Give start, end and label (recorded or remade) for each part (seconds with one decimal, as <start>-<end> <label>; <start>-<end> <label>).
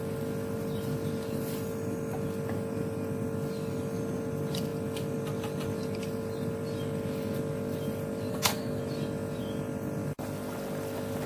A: 0.0-8.3 recorded; 8.3-8.8 remade; 8.8-11.3 recorded